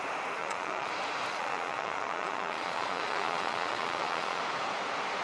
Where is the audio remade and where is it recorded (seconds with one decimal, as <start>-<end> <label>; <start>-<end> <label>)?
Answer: 0.0-0.4 recorded; 0.4-0.9 remade; 0.9-1.3 recorded; 1.3-4.4 remade; 4.4-5.2 recorded